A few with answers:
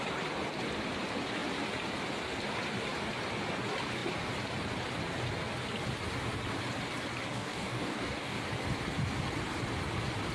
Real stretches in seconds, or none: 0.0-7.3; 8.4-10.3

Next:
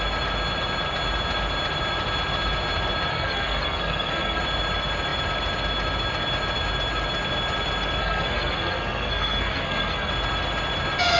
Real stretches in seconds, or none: 0.0-3.1; 4.4-8.0; 10.1-11.2

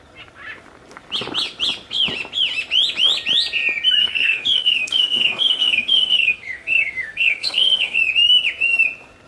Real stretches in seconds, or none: 0.0-4.0; 8.0-9.3

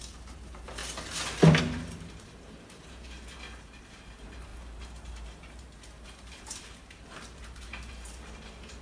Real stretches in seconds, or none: 0.8-1.6

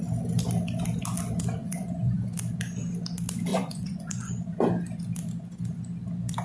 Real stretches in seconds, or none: 0.0-1.6; 2.3-3.5; 4.3-6.4

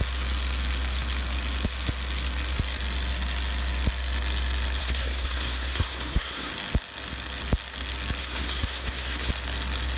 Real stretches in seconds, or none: 0.0-4.8; 6.5-8.2; 9.3-10.0